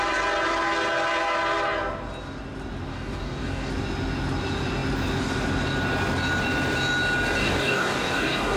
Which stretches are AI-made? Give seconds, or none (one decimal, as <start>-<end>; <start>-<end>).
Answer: 2.9-3.7; 7.4-8.6

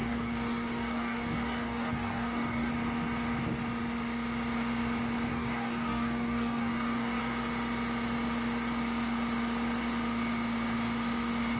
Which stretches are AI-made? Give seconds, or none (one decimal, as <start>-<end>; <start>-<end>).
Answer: 0.0-2.7; 5.3-7.2

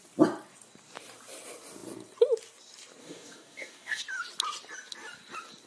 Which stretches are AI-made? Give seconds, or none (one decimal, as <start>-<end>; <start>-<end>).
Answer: 3.0-4.0

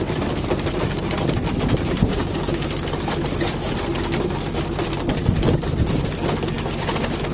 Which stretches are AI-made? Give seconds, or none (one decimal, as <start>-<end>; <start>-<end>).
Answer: 2.1-2.6